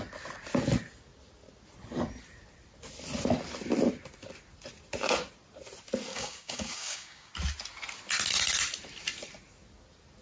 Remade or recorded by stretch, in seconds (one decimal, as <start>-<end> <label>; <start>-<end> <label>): 0.0-6.1 recorded; 6.1-7.3 remade; 7.3-10.2 recorded